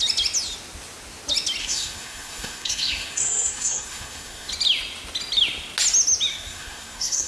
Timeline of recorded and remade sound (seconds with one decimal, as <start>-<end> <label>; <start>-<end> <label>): 0.0-1.6 recorded; 1.6-4.5 remade; 4.5-6.3 recorded; 6.3-7.3 remade